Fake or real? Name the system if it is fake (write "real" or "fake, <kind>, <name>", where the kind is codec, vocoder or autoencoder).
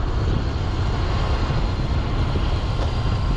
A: real